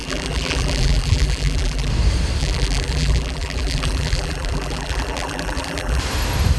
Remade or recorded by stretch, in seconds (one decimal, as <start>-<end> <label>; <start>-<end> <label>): 0.0-1.9 remade; 1.9-2.4 recorded; 2.4-6.0 remade; 6.0-6.6 recorded